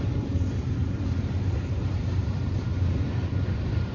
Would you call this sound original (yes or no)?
no